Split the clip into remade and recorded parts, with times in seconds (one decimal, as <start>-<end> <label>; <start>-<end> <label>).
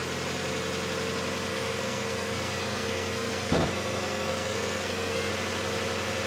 0.0-1.5 recorded; 1.5-5.3 remade; 5.3-6.3 recorded